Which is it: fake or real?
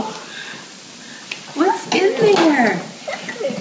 real